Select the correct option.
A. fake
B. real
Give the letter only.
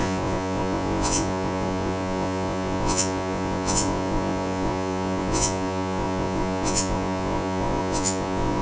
A